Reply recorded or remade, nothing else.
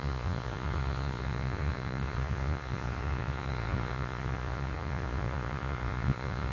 remade